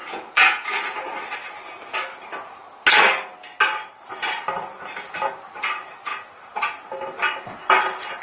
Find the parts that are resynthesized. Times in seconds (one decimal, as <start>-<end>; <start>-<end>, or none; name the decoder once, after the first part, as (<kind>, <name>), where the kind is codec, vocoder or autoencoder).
0.0-1.1 (vocoder, Vocos)